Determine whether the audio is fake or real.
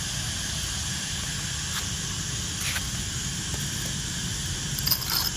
real